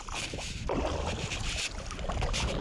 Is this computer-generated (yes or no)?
no